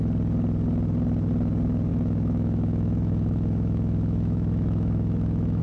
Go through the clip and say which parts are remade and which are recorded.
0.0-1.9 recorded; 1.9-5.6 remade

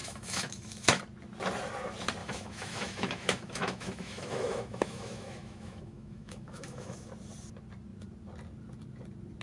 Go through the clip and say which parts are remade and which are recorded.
0.0-1.0 remade; 1.0-2.2 recorded; 2.2-7.1 remade; 7.1-9.4 recorded